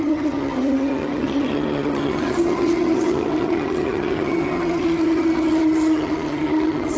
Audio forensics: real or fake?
fake